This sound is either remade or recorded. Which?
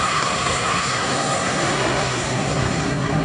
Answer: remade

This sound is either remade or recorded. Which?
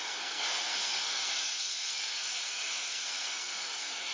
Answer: remade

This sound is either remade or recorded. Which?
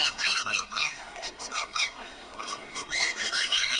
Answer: remade